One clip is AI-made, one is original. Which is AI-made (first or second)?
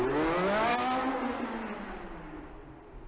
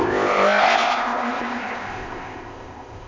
second